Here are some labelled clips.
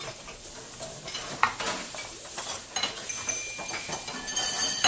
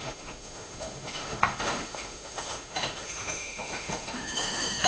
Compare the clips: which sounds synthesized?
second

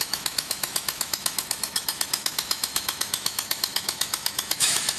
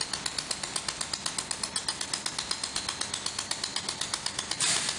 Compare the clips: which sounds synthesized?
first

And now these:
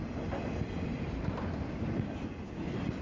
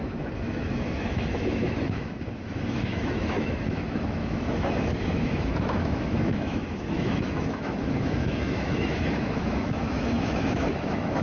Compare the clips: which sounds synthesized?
second